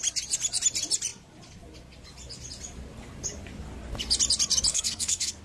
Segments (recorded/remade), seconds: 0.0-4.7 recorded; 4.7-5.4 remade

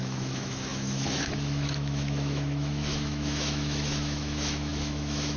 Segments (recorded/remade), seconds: 0.0-5.4 remade

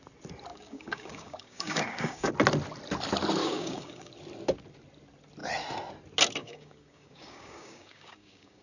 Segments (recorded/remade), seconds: 0.0-0.5 recorded; 0.5-2.3 remade; 2.3-3.4 recorded; 3.4-4.1 remade; 4.1-6.4 recorded; 6.4-8.6 remade

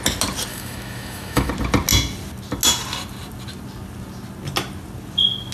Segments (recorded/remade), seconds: 0.0-0.5 recorded; 0.5-1.5 remade; 1.5-5.5 recorded

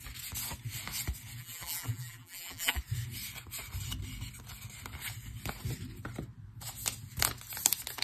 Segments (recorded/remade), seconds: 0.0-1.4 recorded; 1.4-2.8 remade; 2.8-8.0 recorded

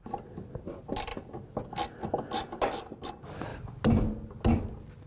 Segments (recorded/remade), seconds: 0.0-5.1 recorded